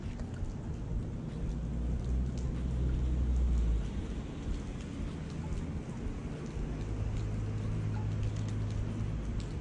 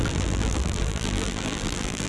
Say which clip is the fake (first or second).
second